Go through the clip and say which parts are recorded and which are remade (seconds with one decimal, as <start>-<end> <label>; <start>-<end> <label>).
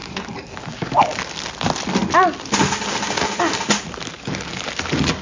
0.0-1.2 remade; 1.2-4.1 recorded; 4.1-4.7 remade; 4.7-5.2 recorded